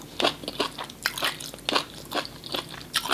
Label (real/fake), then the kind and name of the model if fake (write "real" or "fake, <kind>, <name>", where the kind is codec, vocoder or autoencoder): real